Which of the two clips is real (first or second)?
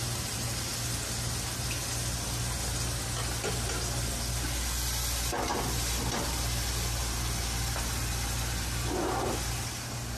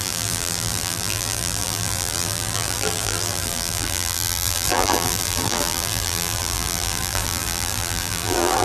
first